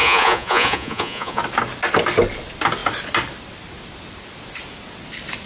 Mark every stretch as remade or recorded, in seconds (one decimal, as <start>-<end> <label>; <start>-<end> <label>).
0.0-1.4 remade; 1.4-5.5 recorded